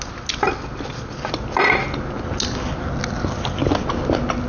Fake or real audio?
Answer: real